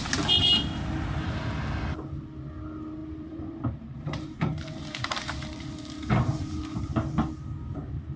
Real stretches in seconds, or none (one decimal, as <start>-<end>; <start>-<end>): 0.0-3.0; 6.8-8.2